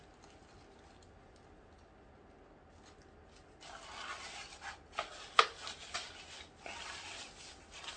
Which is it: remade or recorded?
recorded